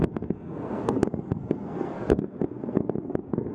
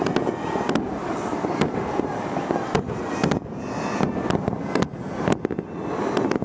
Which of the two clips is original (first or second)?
second